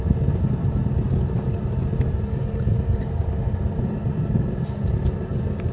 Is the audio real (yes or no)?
yes